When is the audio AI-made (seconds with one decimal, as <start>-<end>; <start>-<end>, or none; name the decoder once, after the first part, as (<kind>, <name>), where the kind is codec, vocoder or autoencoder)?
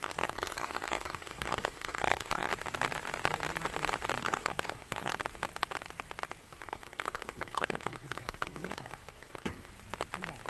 0.0-2.5 (codec, SNAC); 4.2-5.1; 6.4-9.7